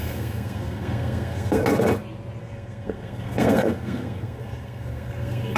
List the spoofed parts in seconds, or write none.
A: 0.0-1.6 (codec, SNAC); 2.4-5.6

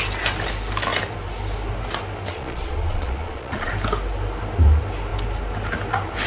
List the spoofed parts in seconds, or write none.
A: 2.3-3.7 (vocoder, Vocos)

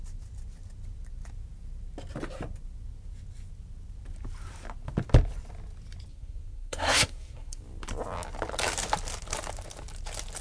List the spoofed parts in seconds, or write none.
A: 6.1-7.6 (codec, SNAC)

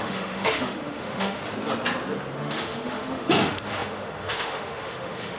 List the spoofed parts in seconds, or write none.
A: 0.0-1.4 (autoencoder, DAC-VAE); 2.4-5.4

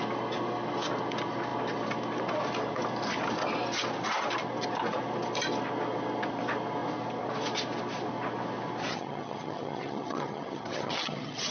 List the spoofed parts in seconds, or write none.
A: 8.9-11.5 (vocoder, HiFi-GAN)